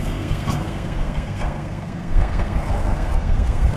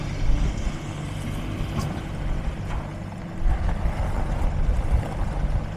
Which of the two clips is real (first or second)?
second